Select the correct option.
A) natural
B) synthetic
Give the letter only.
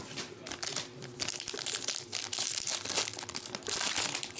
B